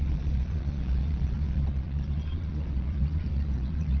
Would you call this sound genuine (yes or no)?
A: no